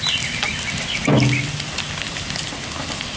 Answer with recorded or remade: recorded